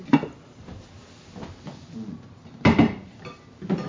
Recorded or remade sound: recorded